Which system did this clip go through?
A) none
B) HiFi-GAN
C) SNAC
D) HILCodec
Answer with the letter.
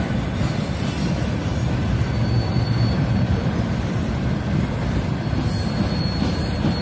A